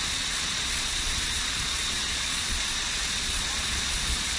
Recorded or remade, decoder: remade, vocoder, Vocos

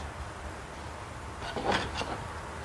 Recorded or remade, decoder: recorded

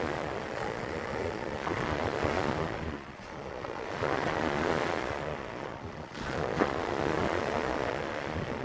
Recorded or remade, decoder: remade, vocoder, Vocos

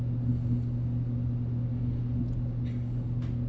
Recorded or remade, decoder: recorded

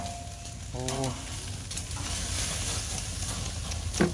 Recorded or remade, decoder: recorded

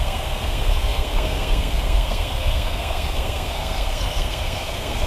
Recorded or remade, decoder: remade, codec, SNAC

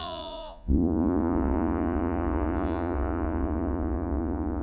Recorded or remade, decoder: remade, vocoder, Vocos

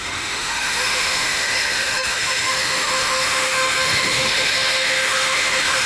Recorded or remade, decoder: remade, autoencoder, DAC-VAE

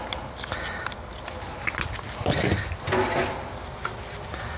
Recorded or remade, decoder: recorded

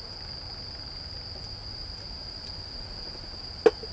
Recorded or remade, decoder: recorded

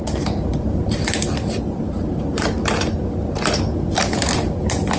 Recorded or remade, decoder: remade, vocoder, BigVGAN v2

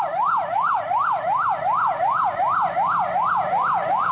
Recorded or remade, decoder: recorded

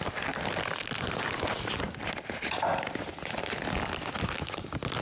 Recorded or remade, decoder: recorded